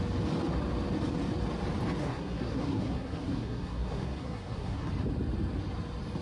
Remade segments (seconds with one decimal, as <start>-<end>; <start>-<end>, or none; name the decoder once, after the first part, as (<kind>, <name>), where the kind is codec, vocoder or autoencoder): 2.0-4.9 (codec, SNAC)